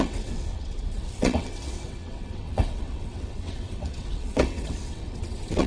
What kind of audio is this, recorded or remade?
remade